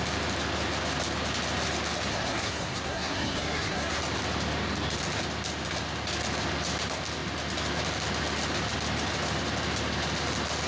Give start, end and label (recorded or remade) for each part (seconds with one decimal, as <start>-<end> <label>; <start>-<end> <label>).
0.0-2.1 recorded; 2.1-4.0 remade; 4.0-10.7 recorded